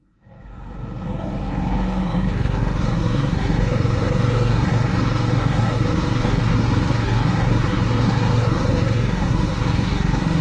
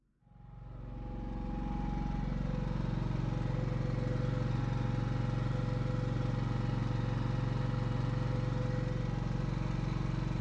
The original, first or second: second